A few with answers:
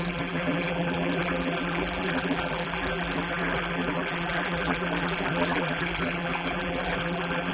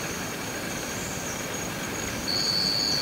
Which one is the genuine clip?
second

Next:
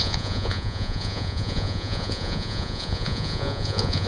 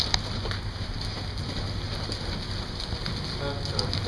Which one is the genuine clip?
second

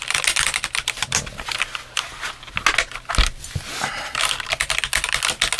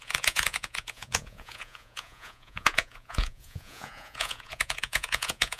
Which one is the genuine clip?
first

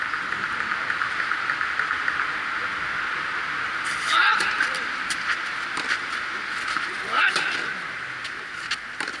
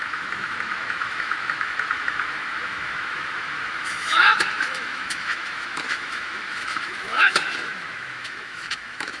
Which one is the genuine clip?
first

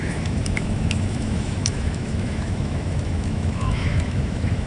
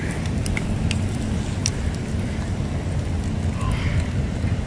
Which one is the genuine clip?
second